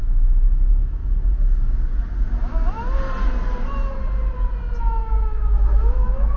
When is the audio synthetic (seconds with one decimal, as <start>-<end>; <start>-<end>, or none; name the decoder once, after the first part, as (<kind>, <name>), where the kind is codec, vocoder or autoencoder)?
0.0-1.0 (autoencoder, DAC-VAE); 4.8-6.4